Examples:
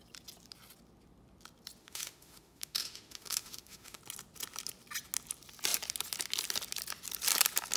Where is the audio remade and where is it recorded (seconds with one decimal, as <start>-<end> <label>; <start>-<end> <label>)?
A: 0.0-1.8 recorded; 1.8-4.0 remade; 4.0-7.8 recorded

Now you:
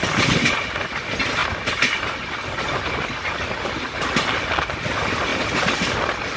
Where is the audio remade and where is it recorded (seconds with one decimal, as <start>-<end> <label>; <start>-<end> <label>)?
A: 0.0-5.3 recorded; 5.3-5.9 remade; 5.9-6.4 recorded

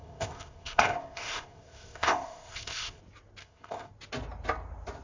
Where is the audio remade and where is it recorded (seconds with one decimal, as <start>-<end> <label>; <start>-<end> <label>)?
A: 0.0-3.0 remade; 3.0-3.4 recorded; 3.4-3.9 remade; 3.9-5.0 recorded

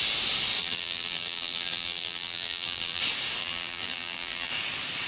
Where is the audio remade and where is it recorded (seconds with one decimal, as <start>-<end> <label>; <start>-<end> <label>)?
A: 0.0-0.6 recorded; 0.6-3.0 remade; 3.0-3.4 recorded; 3.4-4.5 remade; 4.5-5.1 recorded